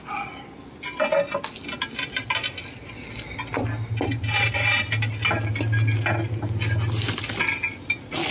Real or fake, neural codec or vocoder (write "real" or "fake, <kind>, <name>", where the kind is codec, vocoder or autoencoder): real